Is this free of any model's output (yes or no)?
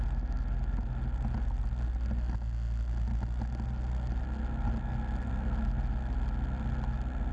yes